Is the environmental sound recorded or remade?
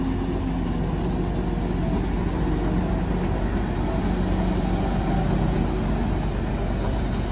recorded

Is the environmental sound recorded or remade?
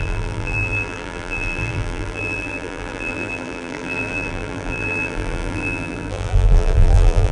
remade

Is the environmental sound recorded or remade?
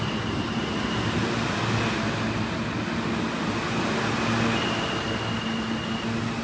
recorded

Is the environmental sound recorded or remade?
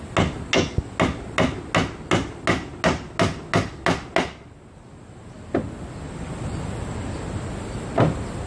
recorded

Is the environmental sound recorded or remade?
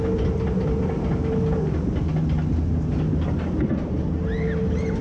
recorded